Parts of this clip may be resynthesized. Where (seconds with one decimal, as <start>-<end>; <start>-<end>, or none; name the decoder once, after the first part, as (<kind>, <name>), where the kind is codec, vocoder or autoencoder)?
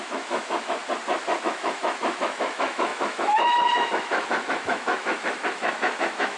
0.0-0.8 (autoencoder, DAC-VAE); 1.4-6.4